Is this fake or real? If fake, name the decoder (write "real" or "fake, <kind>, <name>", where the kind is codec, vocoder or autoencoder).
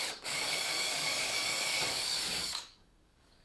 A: fake, codec, DAC